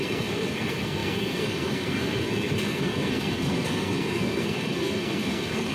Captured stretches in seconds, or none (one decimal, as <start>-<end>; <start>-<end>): none